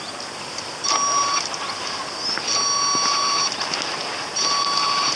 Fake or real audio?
real